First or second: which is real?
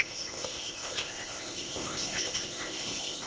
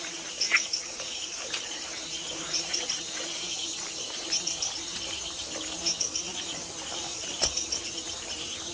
second